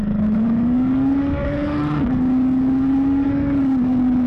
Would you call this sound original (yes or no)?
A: no